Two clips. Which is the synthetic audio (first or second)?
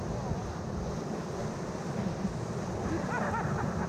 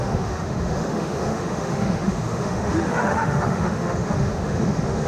second